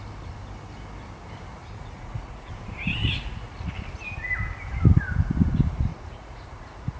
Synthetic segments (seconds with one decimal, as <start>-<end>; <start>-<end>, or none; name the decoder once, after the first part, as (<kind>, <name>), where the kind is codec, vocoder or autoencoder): 1.6-2.5 (vocoder, Vocos); 3.0-3.7; 5.9-7.0